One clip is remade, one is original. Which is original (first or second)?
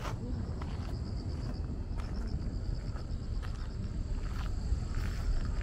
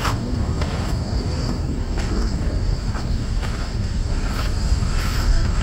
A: first